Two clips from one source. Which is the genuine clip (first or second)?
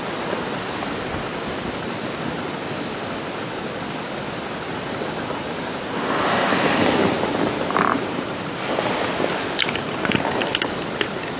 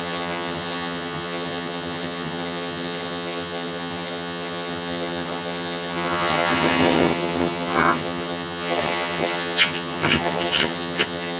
first